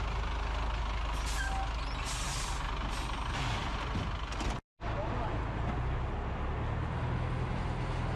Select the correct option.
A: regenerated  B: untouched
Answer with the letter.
B